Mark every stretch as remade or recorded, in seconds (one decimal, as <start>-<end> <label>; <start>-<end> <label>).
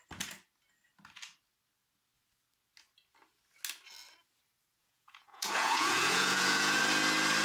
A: 0.0-4.8 recorded; 4.8-6.8 remade; 6.8-7.4 recorded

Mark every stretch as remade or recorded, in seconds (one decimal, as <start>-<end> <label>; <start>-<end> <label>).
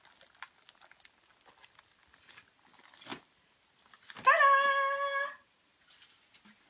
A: 0.0-6.7 recorded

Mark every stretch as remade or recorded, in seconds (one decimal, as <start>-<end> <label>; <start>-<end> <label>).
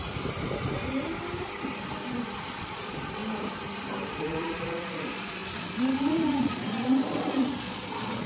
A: 0.0-2.6 recorded; 2.6-3.2 remade; 3.2-4.1 recorded; 4.1-8.3 remade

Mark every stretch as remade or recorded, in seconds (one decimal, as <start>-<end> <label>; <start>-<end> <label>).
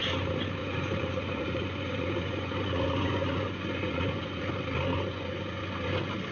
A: 0.0-0.6 recorded; 0.6-4.4 remade; 4.4-4.9 recorded; 4.9-5.6 remade; 5.6-6.3 recorded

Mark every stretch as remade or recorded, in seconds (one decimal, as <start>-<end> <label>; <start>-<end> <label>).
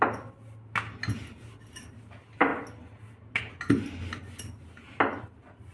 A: 0.0-5.7 recorded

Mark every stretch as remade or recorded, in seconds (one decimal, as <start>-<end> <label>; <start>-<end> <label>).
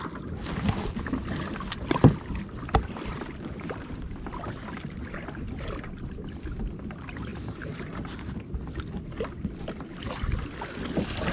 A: 0.0-11.3 recorded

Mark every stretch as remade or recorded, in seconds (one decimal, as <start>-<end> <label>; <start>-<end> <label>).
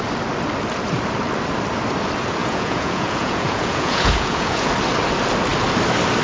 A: 0.0-2.4 recorded; 2.4-4.7 remade; 4.7-6.2 recorded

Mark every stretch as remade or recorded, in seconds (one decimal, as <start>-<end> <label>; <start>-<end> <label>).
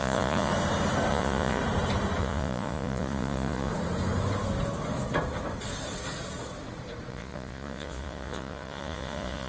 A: 0.0-0.5 remade; 0.5-1.1 recorded; 1.1-1.6 remade; 1.6-2.2 recorded; 2.2-3.7 remade; 3.7-7.1 recorded; 7.1-9.5 remade